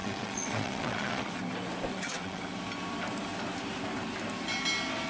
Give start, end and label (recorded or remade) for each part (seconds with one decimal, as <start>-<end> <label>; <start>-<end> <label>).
0.0-1.3 remade; 1.3-1.9 recorded; 1.9-2.4 remade; 2.4-5.1 recorded